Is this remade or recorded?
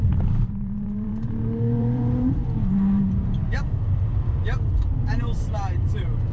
remade